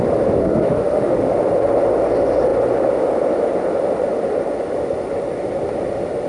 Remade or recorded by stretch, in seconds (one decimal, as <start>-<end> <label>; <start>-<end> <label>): 0.0-0.4 recorded; 0.4-1.3 remade; 1.3-6.3 recorded